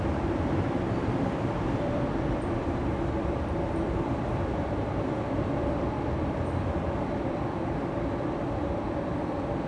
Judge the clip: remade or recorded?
remade